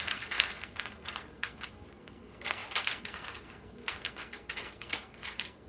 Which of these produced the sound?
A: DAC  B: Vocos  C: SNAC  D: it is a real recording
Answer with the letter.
C